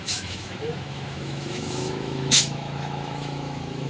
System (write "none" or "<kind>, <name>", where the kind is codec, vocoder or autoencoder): autoencoder, DAC-VAE